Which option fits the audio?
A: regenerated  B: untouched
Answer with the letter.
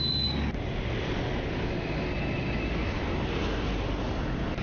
B